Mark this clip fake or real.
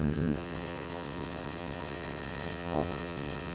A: fake